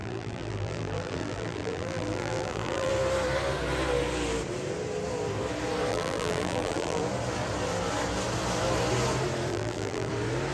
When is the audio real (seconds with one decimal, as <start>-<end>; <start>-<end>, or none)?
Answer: 2.9-5.9; 7.0-9.5; 10.1-10.5